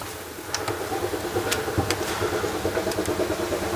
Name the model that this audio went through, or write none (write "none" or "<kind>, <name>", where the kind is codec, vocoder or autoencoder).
none